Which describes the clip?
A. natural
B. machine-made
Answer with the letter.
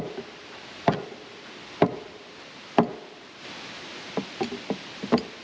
A